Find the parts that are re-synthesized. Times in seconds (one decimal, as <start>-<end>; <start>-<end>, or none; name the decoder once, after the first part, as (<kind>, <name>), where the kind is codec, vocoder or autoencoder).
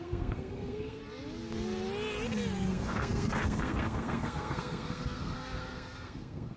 0.0-1.0 (codec, SNAC); 2.7-6.6